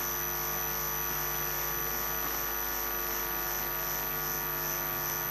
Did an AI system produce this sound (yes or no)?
no